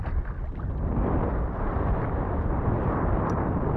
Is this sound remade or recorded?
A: remade